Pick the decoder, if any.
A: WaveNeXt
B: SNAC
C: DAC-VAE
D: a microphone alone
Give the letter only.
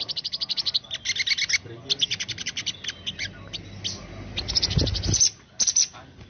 D